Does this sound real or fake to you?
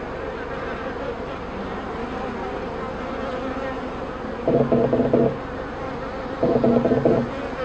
real